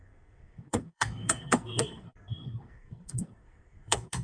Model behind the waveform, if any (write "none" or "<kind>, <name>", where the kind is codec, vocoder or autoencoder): codec, SNAC